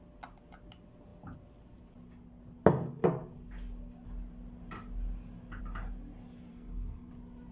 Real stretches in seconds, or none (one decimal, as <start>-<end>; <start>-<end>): 0.0-6.5; 7.1-7.5